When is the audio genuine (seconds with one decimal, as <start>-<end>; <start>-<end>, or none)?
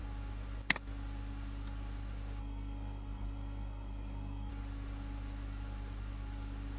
0.0-2.4; 4.5-6.8